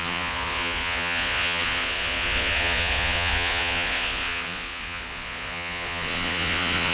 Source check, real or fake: fake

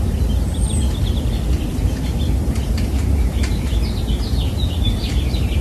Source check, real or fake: real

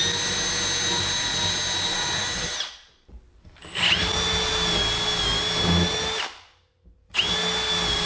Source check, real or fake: real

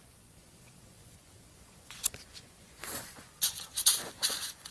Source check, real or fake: fake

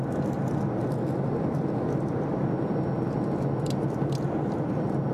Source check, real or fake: real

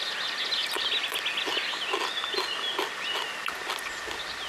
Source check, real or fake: real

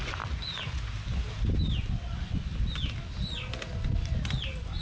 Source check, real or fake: real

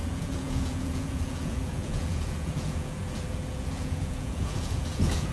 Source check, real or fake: fake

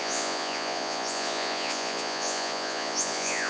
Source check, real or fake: fake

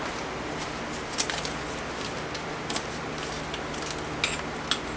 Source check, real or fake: real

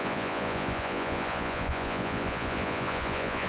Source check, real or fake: fake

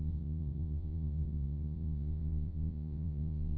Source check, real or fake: fake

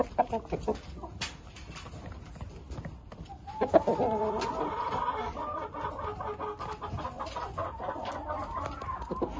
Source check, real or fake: real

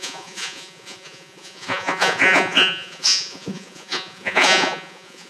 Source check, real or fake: fake